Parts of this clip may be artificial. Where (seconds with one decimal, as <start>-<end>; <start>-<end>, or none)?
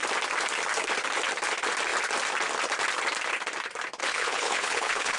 4.0-5.2